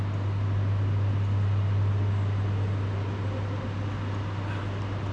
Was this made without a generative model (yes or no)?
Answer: yes